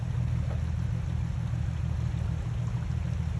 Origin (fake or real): real